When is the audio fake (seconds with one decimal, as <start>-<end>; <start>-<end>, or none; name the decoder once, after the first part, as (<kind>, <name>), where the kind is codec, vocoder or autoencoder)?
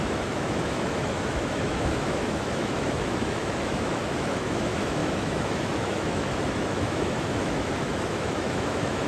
0.0-9.1 (autoencoder, DAC-VAE)